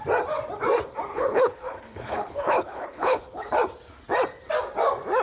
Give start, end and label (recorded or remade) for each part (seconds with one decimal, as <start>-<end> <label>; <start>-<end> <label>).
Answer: 0.0-1.1 recorded; 1.1-3.5 remade; 3.5-5.2 recorded